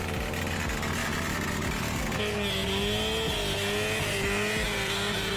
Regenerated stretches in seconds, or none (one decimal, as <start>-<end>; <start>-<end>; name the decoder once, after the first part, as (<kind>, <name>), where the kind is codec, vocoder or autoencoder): none